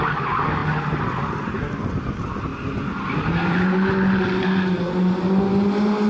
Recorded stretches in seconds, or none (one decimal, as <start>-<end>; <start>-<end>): 0.0-4.4; 4.9-6.1